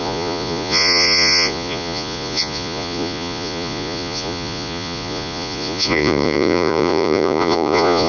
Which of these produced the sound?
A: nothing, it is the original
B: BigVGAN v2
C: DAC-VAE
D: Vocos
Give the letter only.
D